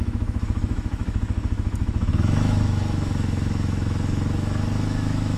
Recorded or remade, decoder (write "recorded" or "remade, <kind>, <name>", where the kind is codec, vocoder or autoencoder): remade, autoencoder, DAC-VAE